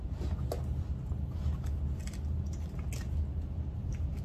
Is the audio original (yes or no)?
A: yes